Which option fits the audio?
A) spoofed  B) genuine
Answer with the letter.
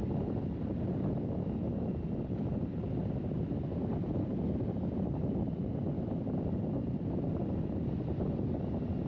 B